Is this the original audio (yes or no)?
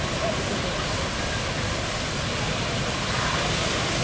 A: yes